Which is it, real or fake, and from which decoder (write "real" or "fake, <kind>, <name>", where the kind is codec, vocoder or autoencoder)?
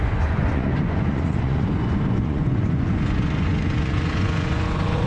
fake, vocoder, Vocos